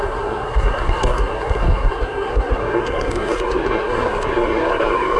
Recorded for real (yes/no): no